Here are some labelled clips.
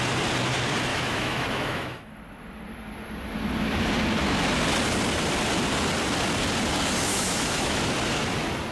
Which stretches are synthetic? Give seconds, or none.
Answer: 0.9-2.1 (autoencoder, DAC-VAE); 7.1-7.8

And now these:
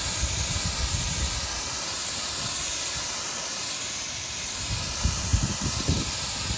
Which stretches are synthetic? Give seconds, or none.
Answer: none

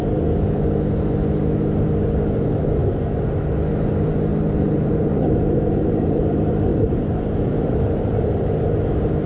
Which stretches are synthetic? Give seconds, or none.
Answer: 4.3-6.2 (vocoder, BigVGAN v2); 6.7-8.2

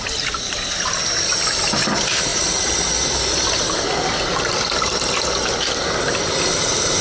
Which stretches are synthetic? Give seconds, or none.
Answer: none

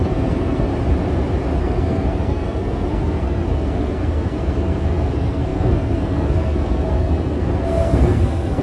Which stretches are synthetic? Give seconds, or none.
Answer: 0.0-0.7 (codec, SNAC); 1.6-8.6